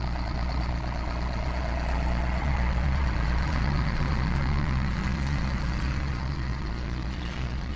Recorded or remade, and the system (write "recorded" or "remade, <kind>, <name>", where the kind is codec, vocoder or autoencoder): remade, vocoder, Vocos